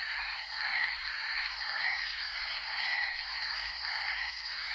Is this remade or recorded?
remade